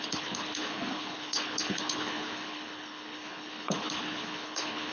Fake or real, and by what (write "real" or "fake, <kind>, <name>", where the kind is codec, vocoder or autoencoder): fake, codec, HILCodec